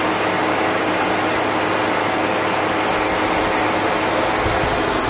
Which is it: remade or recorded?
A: recorded